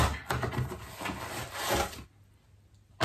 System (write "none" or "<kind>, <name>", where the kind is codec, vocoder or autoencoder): none